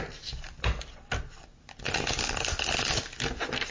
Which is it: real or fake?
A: real